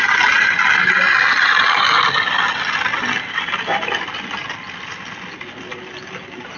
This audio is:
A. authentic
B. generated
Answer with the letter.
A